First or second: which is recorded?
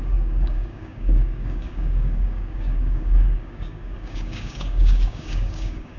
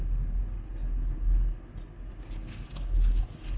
second